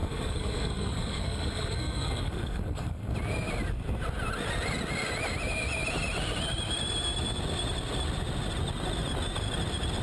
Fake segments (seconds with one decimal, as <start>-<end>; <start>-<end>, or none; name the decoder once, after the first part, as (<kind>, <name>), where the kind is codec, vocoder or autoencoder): 0.0-3.1 (codec, SNAC)